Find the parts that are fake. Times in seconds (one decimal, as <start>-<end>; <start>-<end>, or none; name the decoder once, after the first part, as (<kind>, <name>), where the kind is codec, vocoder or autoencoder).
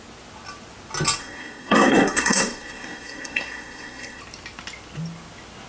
1.2-4.2 (codec, SNAC)